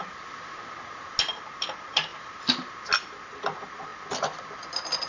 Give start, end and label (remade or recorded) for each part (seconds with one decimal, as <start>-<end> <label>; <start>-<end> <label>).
0.0-5.1 recorded